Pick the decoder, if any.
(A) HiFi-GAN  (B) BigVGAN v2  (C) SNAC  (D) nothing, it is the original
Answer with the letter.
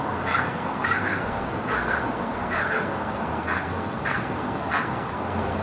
C